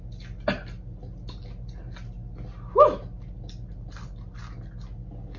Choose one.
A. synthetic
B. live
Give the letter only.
B